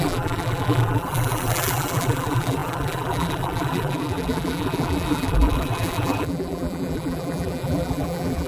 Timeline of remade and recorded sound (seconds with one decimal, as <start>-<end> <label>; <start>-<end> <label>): 0.0-8.5 remade